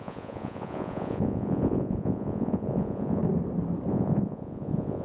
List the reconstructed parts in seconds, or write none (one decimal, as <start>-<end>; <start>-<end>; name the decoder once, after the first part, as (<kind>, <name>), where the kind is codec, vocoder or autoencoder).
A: 0.0-3.2 (vocoder, Vocos); 3.9-5.0